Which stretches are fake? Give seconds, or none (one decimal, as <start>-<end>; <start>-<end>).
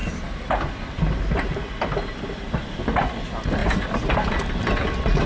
0.0-0.7; 3.6-4.6